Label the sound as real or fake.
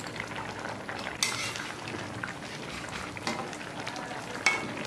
real